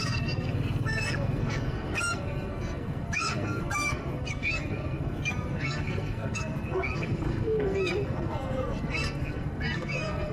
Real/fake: fake